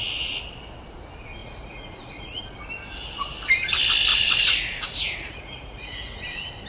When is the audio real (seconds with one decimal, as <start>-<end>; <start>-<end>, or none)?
0.0-1.4; 2.4-4.1; 6.2-6.7